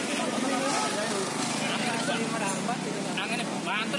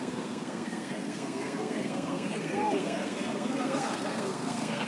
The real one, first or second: first